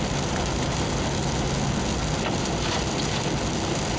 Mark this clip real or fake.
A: real